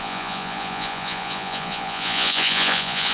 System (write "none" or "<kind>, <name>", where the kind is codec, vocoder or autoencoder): vocoder, Vocos